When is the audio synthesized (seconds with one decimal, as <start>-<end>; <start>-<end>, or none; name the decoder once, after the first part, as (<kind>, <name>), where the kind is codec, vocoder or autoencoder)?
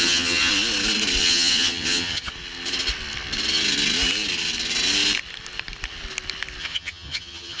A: 0.0-0.5 (vocoder, HiFi-GAN); 1.2-2.3; 6.6-7.6